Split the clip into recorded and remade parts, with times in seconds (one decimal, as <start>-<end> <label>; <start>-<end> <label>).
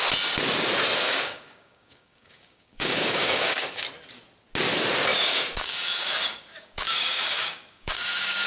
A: 0.0-1.1 recorded; 1.1-3.8 remade; 3.8-5.1 recorded; 5.1-8.5 remade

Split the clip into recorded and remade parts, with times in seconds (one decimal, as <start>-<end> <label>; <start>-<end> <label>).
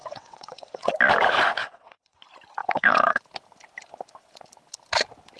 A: 0.0-0.9 remade; 0.9-1.6 recorded; 1.6-2.2 remade; 2.2-2.6 recorded; 2.6-3.2 remade; 3.2-5.4 recorded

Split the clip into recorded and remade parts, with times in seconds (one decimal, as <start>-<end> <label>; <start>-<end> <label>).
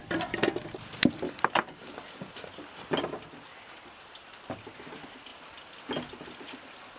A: 0.0-7.0 recorded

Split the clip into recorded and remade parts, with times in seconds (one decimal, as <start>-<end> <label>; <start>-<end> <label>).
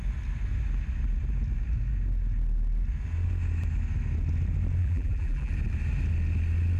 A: 0.0-4.8 recorded; 4.8-5.5 remade; 5.5-6.8 recorded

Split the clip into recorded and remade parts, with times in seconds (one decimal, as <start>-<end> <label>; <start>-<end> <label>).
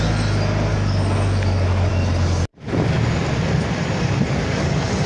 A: 0.0-0.7 recorded; 0.7-1.9 remade; 1.9-5.1 recorded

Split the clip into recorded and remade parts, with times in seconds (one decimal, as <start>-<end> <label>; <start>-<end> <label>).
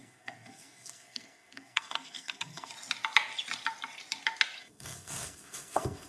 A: 0.0-2.7 remade; 2.7-4.6 recorded; 4.6-6.1 remade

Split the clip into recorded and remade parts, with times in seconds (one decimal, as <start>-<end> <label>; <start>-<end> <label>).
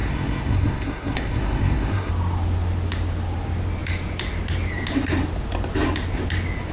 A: 0.0-2.1 remade; 2.1-6.7 recorded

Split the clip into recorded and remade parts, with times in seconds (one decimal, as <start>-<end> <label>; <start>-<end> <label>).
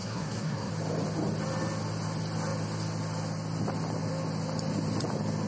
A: 0.0-0.7 remade; 0.7-5.5 recorded